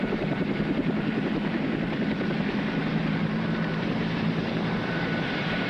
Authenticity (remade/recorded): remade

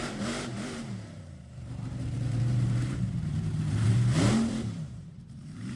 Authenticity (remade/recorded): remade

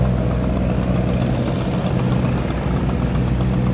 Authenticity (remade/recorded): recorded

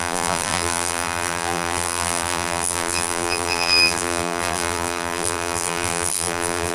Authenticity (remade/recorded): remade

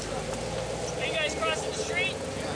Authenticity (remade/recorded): recorded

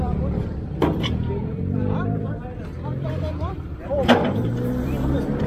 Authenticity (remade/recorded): remade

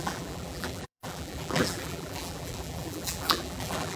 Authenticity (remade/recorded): remade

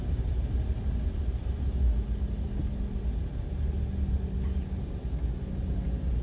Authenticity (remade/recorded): recorded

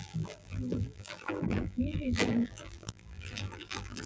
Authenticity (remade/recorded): remade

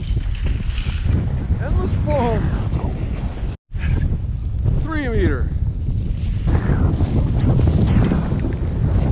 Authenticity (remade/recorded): recorded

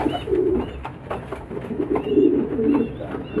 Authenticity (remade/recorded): recorded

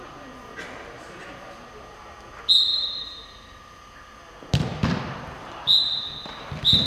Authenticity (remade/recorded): recorded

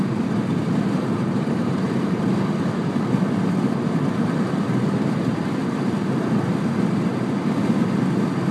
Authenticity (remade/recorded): remade